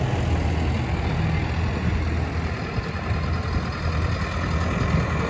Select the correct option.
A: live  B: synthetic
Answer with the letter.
A